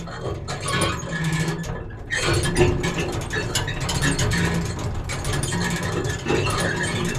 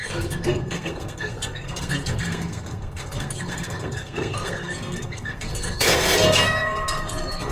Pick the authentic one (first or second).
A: first